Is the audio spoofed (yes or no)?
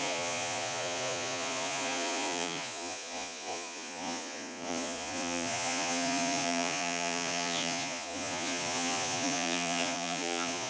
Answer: yes